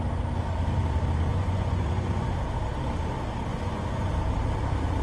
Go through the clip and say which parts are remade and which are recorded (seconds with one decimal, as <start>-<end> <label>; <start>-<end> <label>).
0.0-1.3 recorded; 1.3-2.3 remade; 2.3-3.5 recorded; 3.5-4.1 remade; 4.1-5.0 recorded